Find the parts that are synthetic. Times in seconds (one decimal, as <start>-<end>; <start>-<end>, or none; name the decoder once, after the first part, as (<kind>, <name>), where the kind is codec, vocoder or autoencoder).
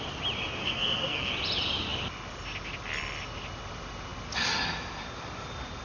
0.6-1.3 (codec, SNAC)